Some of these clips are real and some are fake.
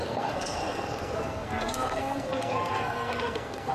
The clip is fake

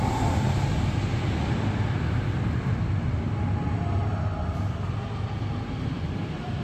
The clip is real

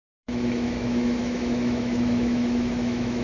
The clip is fake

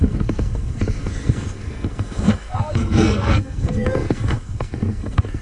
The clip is fake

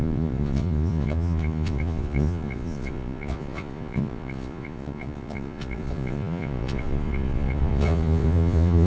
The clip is fake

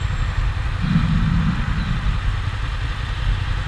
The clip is real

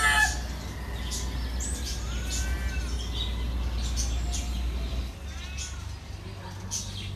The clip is real